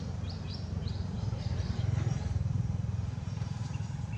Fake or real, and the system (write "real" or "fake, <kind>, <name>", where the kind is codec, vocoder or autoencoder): fake, vocoder, BigVGAN v2